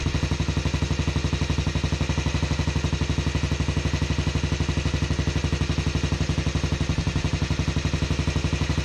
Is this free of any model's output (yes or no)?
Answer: yes